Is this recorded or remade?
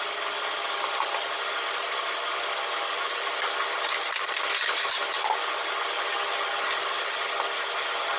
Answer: recorded